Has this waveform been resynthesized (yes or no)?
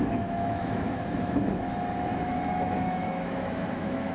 yes